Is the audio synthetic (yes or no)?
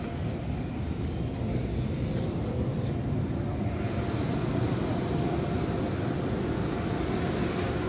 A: no